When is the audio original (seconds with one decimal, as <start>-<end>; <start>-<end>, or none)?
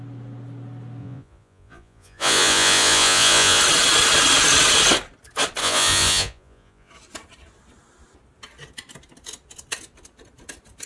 0.0-1.0; 3.6-5.6; 6.9-10.9